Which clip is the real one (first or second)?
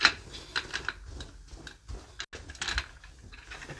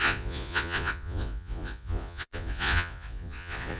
first